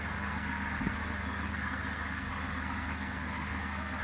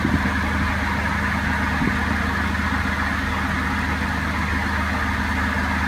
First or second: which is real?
second